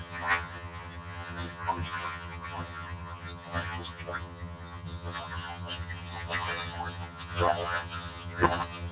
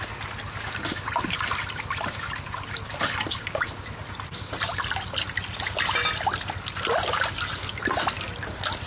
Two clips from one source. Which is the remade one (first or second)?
first